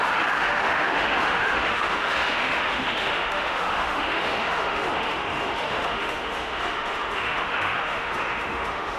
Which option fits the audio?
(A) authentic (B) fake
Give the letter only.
B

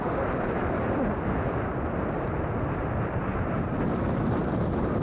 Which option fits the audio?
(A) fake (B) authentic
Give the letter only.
A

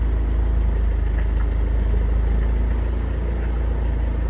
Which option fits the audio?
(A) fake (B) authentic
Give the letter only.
B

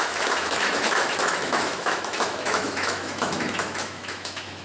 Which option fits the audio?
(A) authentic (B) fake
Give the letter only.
B